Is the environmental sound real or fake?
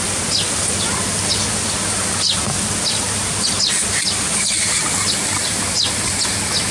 real